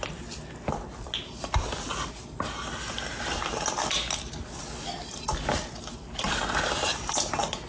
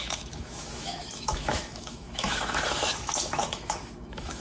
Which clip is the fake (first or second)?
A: second